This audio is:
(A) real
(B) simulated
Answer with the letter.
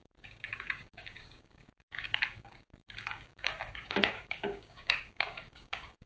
B